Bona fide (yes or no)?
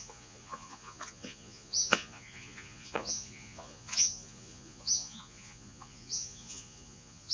no